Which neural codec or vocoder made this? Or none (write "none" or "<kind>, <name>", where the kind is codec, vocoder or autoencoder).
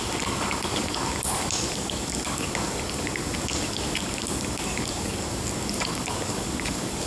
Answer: codec, DAC